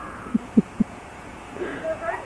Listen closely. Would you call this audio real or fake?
fake